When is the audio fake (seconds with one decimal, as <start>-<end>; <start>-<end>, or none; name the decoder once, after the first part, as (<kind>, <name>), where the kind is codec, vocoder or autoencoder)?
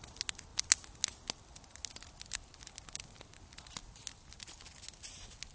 none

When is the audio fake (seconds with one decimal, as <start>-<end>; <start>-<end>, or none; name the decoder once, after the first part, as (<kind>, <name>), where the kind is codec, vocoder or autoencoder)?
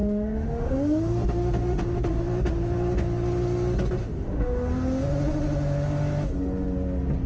0.0-2.2 (autoencoder, DAC-VAE); 4.0-4.7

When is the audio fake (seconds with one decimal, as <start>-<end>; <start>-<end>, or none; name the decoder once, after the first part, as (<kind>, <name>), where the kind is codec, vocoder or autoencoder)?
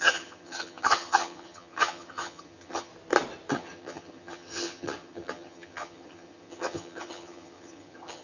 0.0-2.9 (vocoder, HiFi-GAN); 3.5-8.2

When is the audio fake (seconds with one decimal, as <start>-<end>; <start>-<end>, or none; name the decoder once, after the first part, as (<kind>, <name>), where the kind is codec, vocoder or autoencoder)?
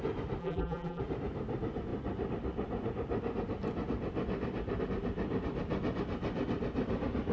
0.4-1.0 (vocoder, BigVGAN v2)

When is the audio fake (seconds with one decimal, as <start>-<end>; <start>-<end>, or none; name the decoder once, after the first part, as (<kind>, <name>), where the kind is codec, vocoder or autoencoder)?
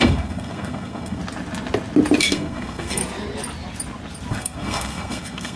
0.0-1.2 (codec, SNAC); 2.2-3.0; 4.3-5.6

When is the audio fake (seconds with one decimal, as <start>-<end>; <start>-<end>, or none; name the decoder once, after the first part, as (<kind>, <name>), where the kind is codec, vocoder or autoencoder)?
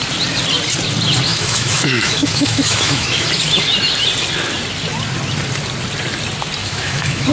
1.3-3.3 (autoencoder, DAC-VAE); 6.6-7.3